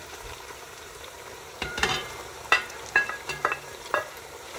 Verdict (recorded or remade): remade